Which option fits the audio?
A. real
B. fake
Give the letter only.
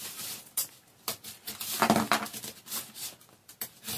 A